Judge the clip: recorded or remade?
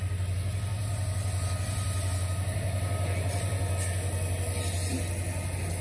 recorded